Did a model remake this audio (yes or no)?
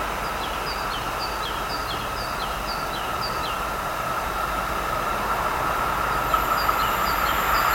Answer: no